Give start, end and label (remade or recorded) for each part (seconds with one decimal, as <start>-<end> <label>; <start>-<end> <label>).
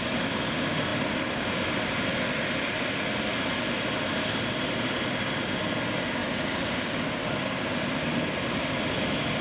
0.0-9.4 recorded